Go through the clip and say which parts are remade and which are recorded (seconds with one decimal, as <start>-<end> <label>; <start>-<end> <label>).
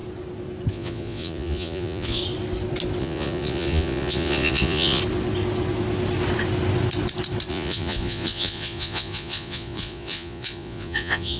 0.0-0.7 recorded; 0.7-2.2 remade; 2.2-3.0 recorded; 3.0-5.0 remade; 5.0-7.5 recorded; 7.5-11.4 remade